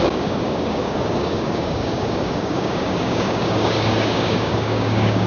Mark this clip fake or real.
fake